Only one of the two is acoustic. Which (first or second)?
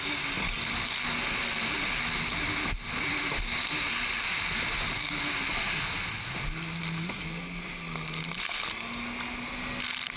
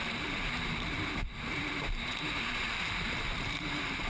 first